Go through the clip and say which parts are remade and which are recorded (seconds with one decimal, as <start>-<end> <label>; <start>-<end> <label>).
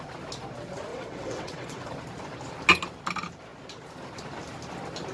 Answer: 0.0-0.9 recorded; 0.9-1.9 remade; 1.9-5.1 recorded